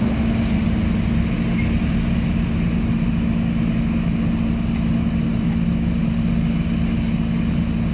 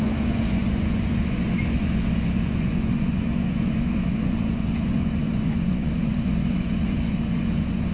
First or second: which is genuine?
first